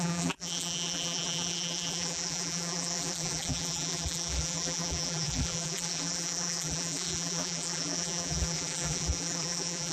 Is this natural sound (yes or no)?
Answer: no